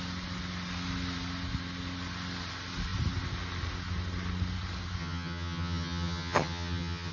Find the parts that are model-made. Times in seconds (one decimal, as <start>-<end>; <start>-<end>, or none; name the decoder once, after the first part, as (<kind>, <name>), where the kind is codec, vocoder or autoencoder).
5.0-7.1 (vocoder, HiFi-GAN)